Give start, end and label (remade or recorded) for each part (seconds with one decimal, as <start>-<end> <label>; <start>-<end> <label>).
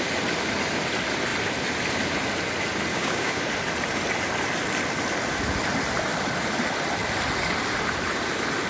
0.0-2.9 recorded; 2.9-3.4 remade; 3.4-8.7 recorded